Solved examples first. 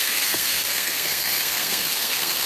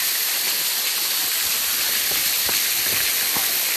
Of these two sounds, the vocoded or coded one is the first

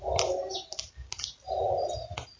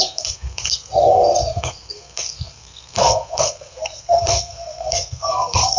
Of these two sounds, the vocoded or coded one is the second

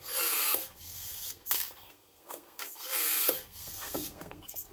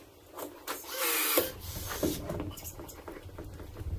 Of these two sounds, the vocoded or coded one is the first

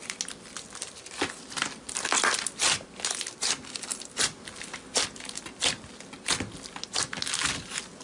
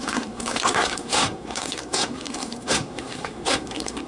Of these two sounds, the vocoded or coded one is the second